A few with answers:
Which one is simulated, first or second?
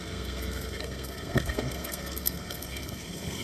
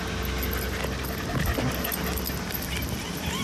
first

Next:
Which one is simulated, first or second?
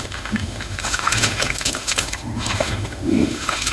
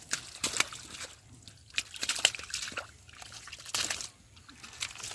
first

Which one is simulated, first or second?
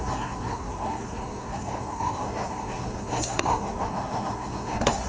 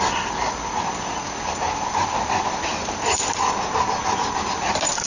first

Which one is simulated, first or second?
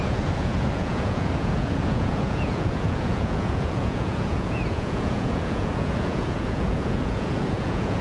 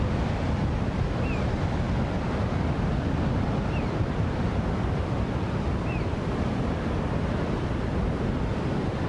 first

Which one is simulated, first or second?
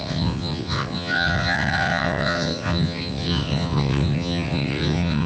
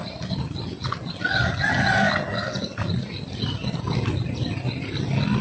first